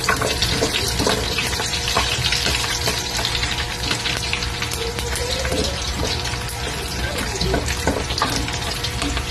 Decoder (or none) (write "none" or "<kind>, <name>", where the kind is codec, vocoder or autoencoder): vocoder, BigVGAN v2